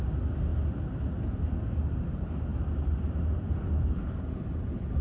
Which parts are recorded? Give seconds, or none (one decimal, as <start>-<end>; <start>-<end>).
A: 0.0-5.0